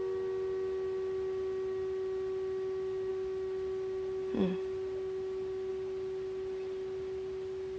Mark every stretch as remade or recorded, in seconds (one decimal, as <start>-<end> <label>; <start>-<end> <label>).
0.0-7.8 recorded